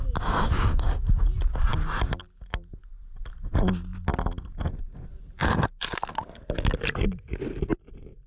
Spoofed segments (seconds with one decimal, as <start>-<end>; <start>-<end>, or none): none